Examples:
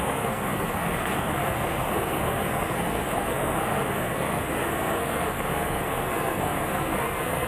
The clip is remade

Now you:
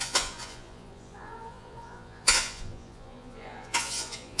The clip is remade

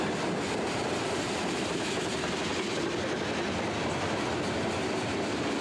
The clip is recorded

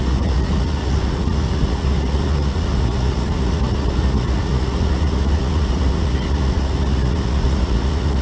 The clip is remade